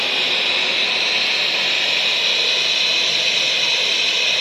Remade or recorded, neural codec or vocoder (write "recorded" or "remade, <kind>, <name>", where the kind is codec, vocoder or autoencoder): recorded